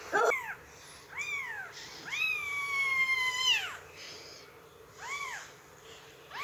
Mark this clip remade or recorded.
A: remade